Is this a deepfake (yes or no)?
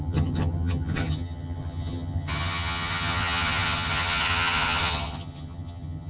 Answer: yes